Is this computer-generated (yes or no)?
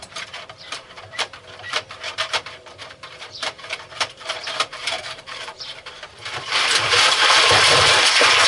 yes